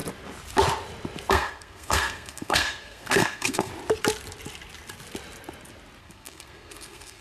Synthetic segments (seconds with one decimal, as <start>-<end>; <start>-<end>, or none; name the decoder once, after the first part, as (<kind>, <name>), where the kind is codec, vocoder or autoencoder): 1.3-3.7 (codec, SNAC); 6.0-7.2